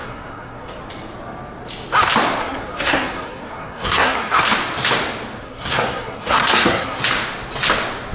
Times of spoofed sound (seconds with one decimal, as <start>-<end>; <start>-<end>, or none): 0.0-0.8; 2.4-4.4; 5.4-7.0